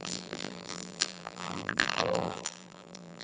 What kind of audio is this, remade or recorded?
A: remade